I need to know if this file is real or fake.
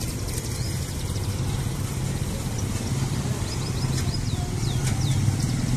real